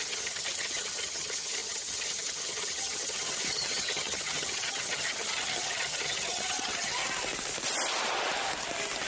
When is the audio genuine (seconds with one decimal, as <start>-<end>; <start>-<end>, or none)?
7.0-9.1